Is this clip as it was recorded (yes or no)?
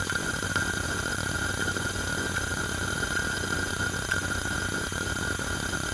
no